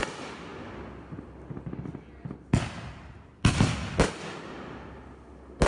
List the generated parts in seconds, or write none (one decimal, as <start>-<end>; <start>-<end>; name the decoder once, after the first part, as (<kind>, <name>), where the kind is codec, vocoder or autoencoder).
none